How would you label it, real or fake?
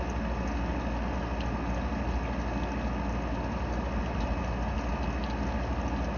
real